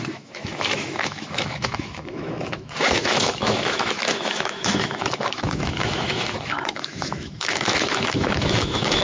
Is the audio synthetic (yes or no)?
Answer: yes